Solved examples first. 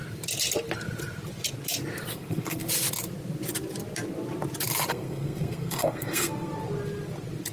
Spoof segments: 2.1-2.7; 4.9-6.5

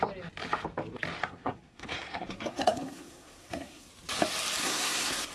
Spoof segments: 1.2-3.9; 4.6-5.3

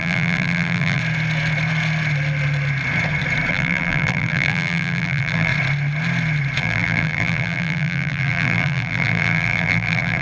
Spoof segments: 0.0-1.0; 3.5-5.5; 6.6-10.2

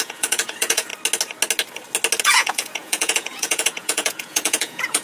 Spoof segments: 0.0-0.9; 2.2-5.0